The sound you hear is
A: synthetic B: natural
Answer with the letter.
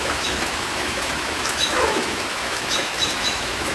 A